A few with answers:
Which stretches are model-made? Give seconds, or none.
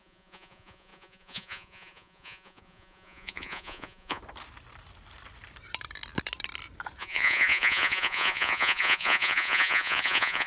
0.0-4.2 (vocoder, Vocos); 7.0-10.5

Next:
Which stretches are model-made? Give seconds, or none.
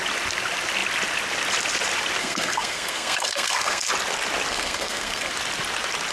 2.2-3.9 (codec, SNAC); 4.5-5.3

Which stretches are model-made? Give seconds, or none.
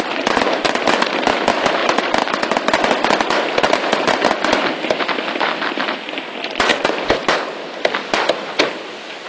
none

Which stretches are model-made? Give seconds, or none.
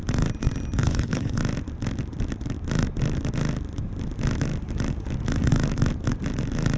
0.8-1.4 (codec, HILCodec)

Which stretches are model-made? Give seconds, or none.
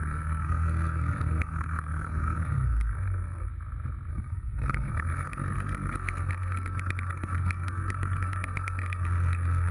0.0-3.5 (codec, SNAC); 4.1-9.7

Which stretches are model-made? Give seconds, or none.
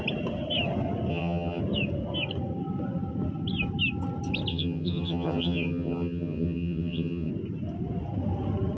1.1-1.6 (vocoder, HiFi-GAN); 4.5-7.3